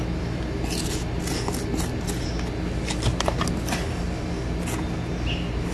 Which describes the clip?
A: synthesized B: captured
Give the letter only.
B